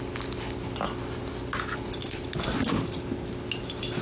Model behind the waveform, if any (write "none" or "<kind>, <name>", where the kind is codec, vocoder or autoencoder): none